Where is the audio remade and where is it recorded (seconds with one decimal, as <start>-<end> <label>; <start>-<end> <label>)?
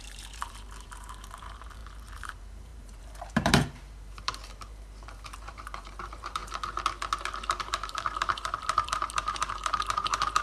0.0-6.4 remade; 6.4-7.6 recorded; 7.6-10.4 remade